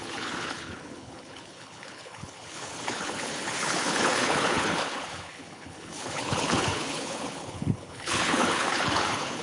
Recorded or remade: remade